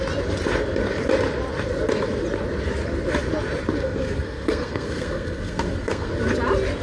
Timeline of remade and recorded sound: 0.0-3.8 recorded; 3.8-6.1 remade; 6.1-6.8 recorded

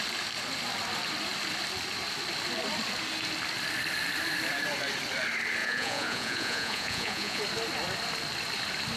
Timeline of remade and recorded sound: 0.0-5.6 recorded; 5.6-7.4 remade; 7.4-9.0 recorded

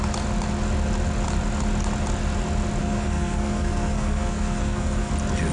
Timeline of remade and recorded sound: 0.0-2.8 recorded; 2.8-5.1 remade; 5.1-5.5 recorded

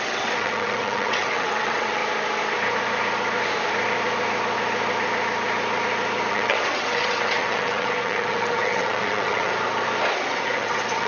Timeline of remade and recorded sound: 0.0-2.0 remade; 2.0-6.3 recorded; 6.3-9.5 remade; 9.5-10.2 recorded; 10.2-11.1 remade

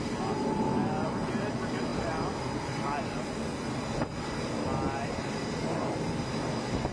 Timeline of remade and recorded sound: 0.0-6.9 recorded

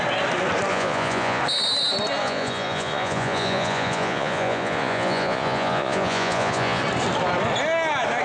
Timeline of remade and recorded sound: 0.0-0.7 recorded; 0.7-1.4 remade; 1.4-2.2 recorded; 2.2-6.8 remade; 6.8-8.2 recorded

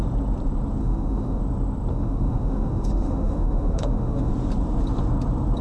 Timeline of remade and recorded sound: 0.0-0.8 recorded; 0.8-1.4 remade; 1.4-1.9 recorded; 1.9-4.3 remade; 4.3-5.6 recorded

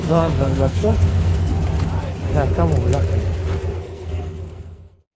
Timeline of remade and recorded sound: 0.0-1.5 remade; 1.5-3.7 recorded; 3.7-5.2 remade